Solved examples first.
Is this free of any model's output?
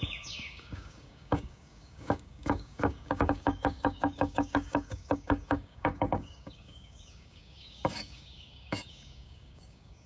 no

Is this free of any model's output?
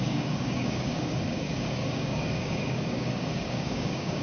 no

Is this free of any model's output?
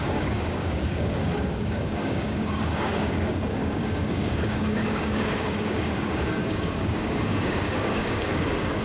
no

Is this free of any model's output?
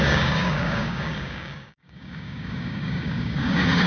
no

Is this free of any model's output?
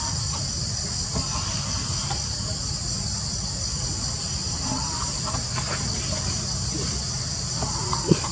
yes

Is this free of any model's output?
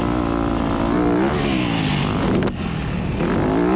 yes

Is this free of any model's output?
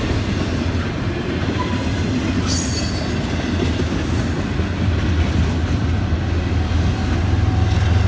yes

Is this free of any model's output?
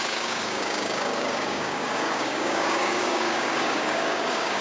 no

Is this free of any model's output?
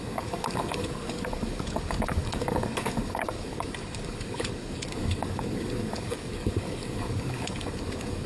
no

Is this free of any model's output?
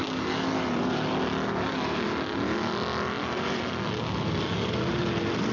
yes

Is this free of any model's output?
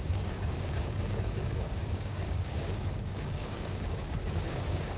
no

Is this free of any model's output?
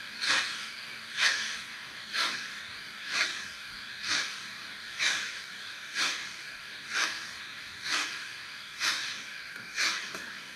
no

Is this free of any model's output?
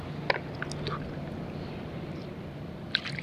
yes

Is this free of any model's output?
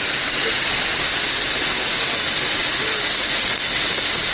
yes